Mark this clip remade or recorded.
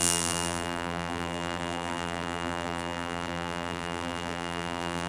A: remade